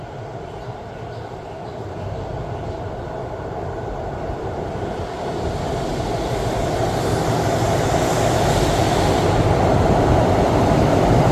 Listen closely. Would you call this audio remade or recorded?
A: remade